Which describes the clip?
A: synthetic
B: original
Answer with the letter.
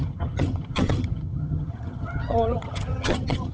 A